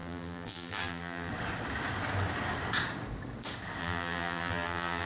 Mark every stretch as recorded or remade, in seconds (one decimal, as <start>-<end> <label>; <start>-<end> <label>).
0.0-1.3 remade; 1.3-3.8 recorded; 3.8-5.1 remade